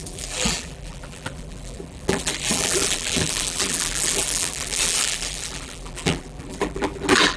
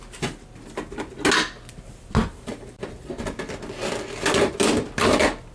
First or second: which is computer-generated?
first